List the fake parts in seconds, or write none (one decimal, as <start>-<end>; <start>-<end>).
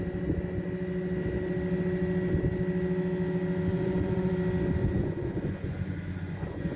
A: 3.7-4.3; 4.8-6.8